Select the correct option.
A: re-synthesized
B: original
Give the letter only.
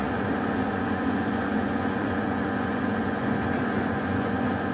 A